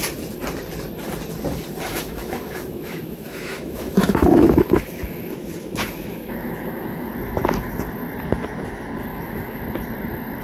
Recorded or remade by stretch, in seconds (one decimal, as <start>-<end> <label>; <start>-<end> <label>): 0.0-1.9 recorded; 1.9-7.1 remade; 7.1-9.1 recorded; 9.1-9.6 remade; 9.6-10.4 recorded